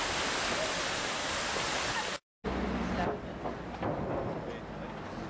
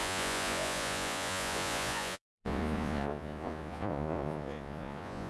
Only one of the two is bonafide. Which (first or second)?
first